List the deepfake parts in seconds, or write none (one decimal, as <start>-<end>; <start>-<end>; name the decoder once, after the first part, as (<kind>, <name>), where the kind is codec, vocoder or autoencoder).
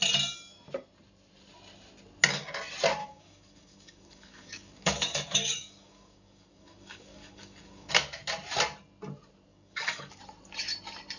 3.0-7.9 (codec, DAC); 9.5-10.2